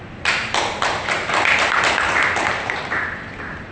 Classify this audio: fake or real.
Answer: fake